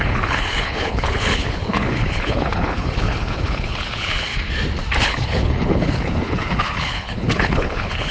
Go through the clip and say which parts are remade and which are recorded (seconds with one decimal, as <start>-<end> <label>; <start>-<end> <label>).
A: 0.0-4.3 remade; 4.3-5.0 recorded; 5.0-8.1 remade